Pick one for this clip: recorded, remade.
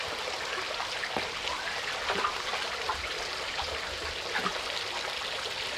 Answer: recorded